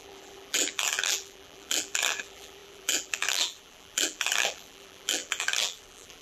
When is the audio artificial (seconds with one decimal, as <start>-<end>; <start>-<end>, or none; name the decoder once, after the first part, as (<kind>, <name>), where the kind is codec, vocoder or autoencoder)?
0.0-6.2 (vocoder, BigVGAN v2)